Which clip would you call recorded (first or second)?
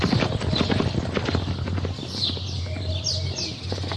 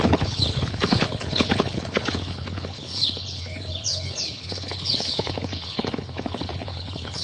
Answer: first